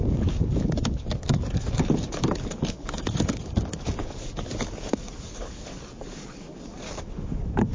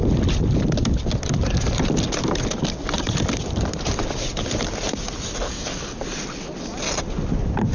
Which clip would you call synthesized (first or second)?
first